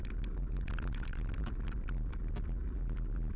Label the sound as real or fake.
real